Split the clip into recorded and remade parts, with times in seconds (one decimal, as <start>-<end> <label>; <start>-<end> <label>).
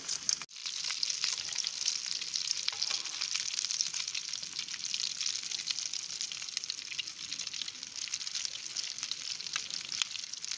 0.0-10.6 recorded